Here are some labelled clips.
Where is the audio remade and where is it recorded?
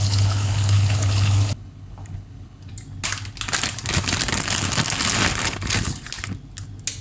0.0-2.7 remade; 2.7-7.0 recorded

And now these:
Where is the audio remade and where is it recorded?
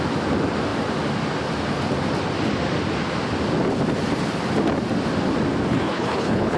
0.0-5.7 recorded; 5.7-6.6 remade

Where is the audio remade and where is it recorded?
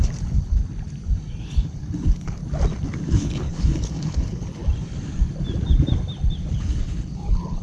0.0-0.6 remade; 0.6-1.4 recorded; 1.4-2.4 remade; 2.4-3.1 recorded; 3.1-4.6 remade; 4.6-6.5 recorded; 6.5-7.6 remade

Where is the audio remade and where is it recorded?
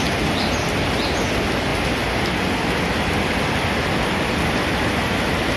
0.0-5.6 recorded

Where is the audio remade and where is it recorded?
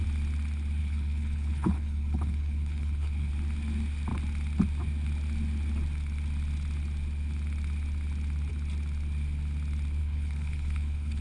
0.0-0.8 recorded; 0.8-3.3 remade; 3.3-10.0 recorded; 10.0-11.2 remade